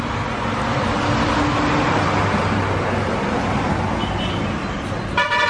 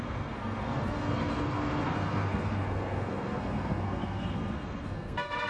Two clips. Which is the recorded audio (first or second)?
first